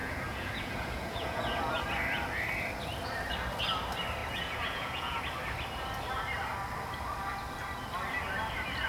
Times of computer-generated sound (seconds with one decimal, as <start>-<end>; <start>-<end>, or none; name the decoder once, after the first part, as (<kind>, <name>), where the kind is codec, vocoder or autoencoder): 0.0-1.8 (vocoder, Vocos); 4.2-5.2